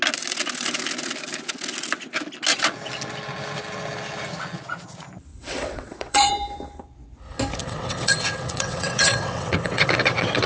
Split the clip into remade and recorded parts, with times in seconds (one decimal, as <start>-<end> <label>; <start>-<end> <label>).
0.0-5.3 recorded; 5.3-6.3 remade; 6.3-7.6 recorded; 7.6-10.5 remade